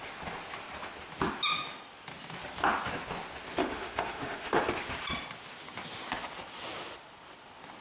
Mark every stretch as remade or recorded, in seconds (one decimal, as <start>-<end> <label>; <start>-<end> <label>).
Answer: 0.0-3.6 recorded; 3.6-4.6 remade; 4.6-7.8 recorded